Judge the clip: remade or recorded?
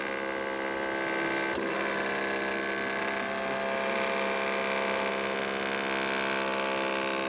recorded